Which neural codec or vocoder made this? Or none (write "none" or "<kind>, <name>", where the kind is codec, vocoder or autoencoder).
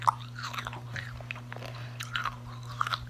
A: none